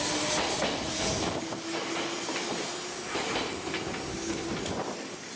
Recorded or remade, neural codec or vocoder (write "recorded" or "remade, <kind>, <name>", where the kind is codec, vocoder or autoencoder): recorded